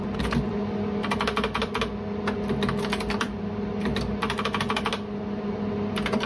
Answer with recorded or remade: recorded